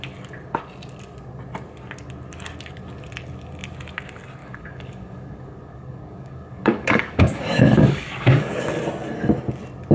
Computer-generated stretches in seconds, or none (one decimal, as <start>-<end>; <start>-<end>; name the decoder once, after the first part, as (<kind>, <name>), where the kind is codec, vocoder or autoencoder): 4.4-8.6 (codec, DAC)